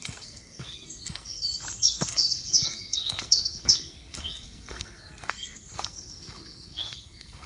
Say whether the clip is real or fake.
fake